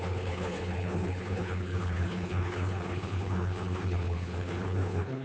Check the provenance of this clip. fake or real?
fake